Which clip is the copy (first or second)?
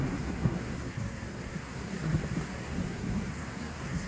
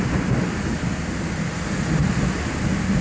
first